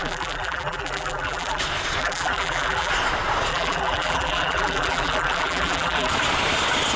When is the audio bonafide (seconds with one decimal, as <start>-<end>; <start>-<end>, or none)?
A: 1.6-2.0; 2.9-3.5; 6.1-7.0